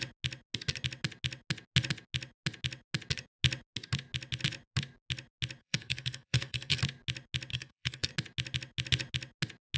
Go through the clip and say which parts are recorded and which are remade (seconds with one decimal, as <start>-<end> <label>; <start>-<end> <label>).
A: 0.0-5.6 recorded; 5.6-6.8 remade; 6.8-7.5 recorded; 7.5-8.1 remade; 8.1-9.8 recorded